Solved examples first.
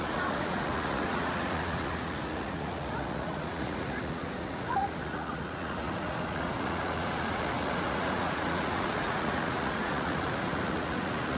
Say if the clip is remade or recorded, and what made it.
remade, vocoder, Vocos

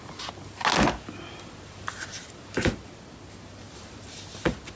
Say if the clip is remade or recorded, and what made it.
recorded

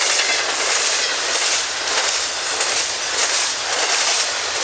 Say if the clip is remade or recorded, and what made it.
recorded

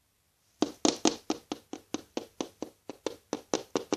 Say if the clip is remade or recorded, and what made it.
recorded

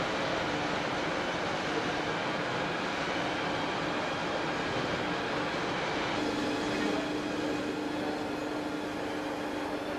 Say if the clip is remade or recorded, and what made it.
recorded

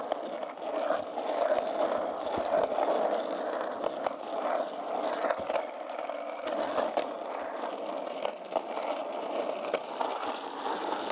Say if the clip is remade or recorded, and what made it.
recorded